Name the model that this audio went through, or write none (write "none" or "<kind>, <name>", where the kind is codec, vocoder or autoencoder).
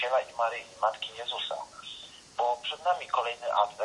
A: none